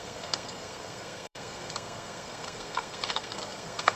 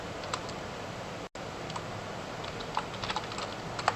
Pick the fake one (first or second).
first